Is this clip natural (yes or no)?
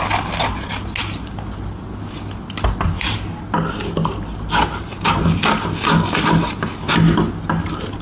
yes